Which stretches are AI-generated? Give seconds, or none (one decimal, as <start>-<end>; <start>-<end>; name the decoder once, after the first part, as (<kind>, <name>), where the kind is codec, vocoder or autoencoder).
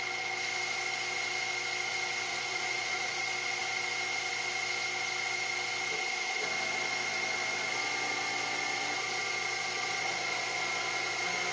2.3-3.2 (vocoder, Vocos)